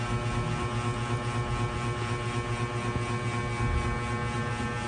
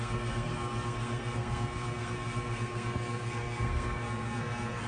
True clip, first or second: first